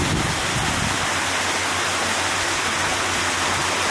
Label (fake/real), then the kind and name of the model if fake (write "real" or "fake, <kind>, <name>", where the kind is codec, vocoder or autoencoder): real